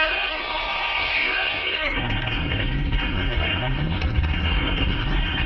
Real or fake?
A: fake